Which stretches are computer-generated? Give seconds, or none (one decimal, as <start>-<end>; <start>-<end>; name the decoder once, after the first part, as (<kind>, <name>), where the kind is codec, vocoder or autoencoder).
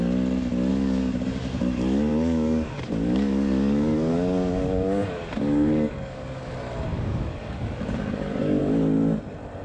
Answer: 0.7-1.6 (codec, DAC); 2.1-6.5; 6.9-8.6